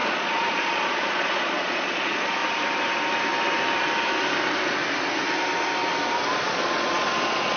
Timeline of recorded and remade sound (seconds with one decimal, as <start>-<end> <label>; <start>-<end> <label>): 0.0-2.4 remade; 2.4-6.3 recorded; 6.3-7.6 remade